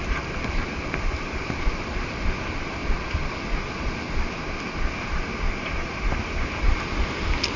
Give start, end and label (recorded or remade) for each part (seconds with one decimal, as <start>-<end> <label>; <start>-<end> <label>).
0.0-7.6 recorded